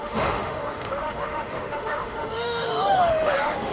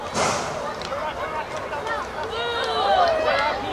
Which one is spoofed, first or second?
first